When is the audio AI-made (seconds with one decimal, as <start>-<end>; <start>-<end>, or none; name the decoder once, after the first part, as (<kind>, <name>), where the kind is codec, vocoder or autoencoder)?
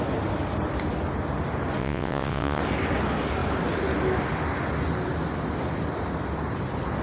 1.8-2.6 (vocoder, WaveNeXt)